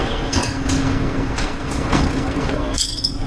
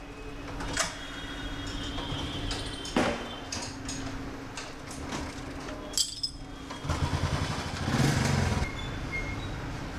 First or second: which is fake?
first